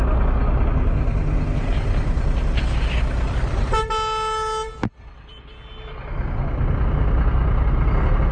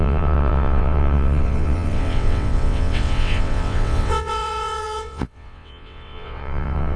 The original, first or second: first